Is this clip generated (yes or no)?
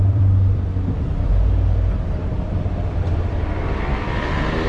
yes